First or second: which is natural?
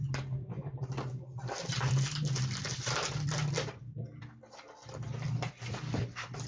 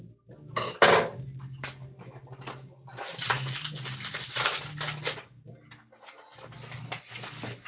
second